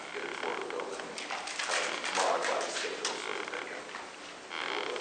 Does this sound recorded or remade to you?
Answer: recorded